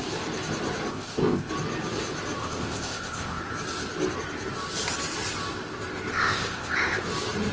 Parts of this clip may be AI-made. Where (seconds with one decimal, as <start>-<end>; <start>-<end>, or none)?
0.9-1.5; 2.4-3.4; 6.1-7.0